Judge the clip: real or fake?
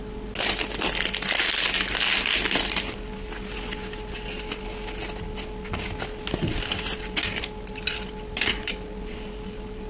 real